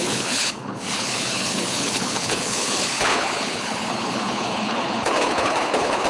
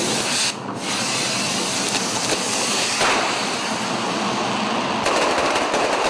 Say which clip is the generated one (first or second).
first